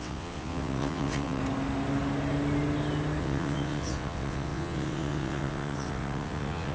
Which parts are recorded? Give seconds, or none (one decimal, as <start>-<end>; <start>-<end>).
1.4-3.2

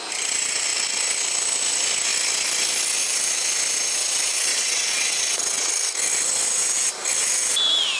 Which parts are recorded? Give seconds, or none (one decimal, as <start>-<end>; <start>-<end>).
0.0-4.5; 5.7-8.0

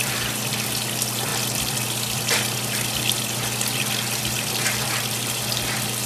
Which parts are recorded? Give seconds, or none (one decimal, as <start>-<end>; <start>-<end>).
0.0-6.1

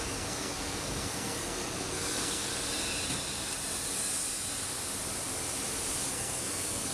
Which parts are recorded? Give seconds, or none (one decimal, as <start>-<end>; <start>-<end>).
2.5-6.1

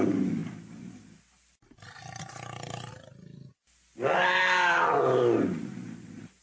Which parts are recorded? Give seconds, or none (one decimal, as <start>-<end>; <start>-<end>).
0.0-6.4

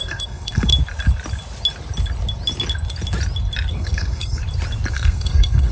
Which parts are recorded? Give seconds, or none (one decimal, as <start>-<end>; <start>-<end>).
0.7-3.7; 4.4-4.9

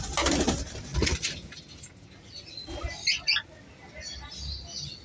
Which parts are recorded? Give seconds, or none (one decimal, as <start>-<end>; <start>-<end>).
0.0-0.9; 1.6-5.0